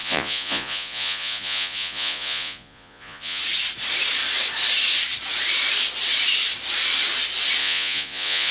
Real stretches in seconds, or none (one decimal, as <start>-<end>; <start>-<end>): 3.4-7.6

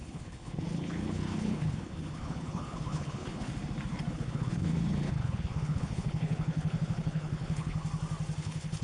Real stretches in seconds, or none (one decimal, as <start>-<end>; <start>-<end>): 3.5-4.1; 7.8-8.4